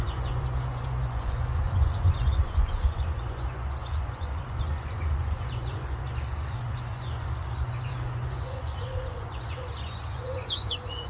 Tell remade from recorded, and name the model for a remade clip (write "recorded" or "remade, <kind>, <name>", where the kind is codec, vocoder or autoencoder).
remade, vocoder, Vocos